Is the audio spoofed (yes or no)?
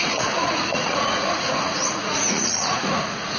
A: yes